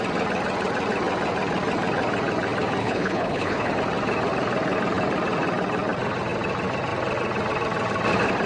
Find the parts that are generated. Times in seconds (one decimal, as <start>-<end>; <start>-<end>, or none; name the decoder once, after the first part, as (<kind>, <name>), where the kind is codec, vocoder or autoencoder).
2.8-3.7 (codec, HILCodec)